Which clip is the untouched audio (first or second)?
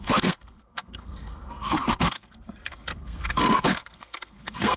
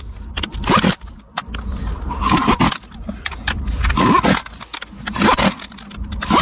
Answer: second